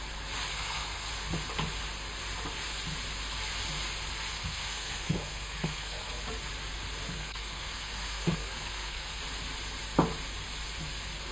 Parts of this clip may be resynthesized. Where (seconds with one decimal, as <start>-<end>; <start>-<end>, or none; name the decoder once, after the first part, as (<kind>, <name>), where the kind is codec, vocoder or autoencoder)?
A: 0.5-1.1 (codec, SNAC); 4.3-6.1; 7.1-9.2

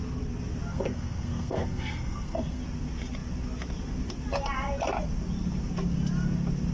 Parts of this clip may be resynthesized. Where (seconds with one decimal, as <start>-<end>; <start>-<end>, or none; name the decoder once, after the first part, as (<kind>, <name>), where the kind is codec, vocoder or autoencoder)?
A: 0.7-2.6 (codec, SNAC)

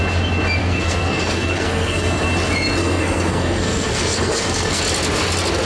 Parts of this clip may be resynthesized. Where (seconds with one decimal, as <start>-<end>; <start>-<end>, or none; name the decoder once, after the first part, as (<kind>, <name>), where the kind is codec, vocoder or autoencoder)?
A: 0.6-2.2 (codec, SNAC); 2.8-4.8

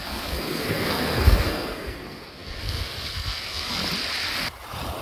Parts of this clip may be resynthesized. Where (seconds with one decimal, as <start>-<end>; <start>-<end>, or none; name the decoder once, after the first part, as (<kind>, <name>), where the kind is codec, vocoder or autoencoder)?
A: 0.0-3.8 (codec, SNAC)

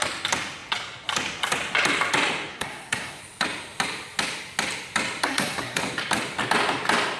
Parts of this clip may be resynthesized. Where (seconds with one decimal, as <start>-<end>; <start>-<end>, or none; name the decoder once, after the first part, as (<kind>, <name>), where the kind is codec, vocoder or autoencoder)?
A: 2.5-3.2 (codec, SNAC); 5.3-5.8

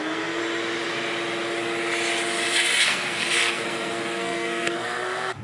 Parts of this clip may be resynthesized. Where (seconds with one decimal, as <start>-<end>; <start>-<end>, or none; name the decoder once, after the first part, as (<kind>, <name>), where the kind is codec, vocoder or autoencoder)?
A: 0.0-0.4 (codec, SNAC); 2.8-5.4